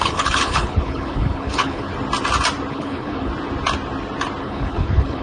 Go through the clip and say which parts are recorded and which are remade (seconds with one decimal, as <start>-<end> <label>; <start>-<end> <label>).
0.0-1.9 remade; 1.9-2.7 recorded; 2.7-3.3 remade; 3.3-4.4 recorded; 4.4-5.2 remade